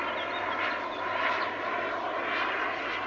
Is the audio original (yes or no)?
yes